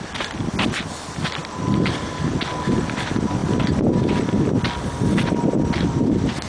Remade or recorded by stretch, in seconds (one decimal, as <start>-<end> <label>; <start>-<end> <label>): 0.0-6.5 recorded